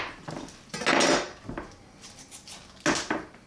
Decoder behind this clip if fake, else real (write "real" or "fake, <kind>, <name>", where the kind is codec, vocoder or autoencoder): real